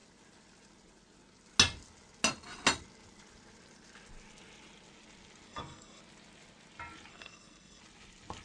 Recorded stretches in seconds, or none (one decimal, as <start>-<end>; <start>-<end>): 0.0-5.5; 6.0-7.1; 7.8-8.4